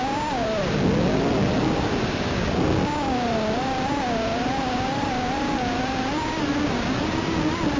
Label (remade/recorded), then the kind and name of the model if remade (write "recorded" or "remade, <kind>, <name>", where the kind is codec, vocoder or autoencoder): recorded